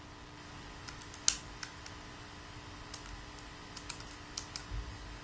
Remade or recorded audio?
recorded